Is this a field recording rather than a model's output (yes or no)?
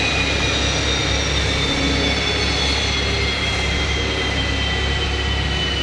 yes